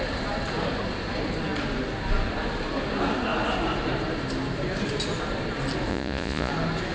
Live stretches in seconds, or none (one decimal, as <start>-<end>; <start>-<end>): 0.0-5.9; 6.5-6.9

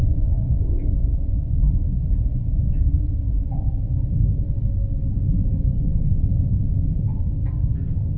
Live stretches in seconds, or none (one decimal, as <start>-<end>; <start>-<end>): 0.6-1.0; 3.0-8.2

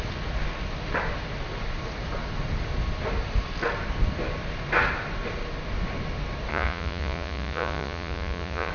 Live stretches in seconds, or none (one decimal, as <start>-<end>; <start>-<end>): 0.0-6.5

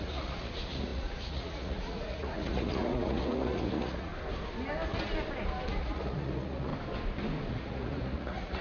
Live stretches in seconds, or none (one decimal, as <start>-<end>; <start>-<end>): 4.1-5.8; 6.7-7.5

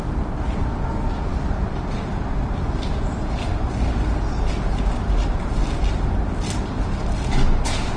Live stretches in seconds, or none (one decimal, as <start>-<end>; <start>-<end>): 0.0-8.0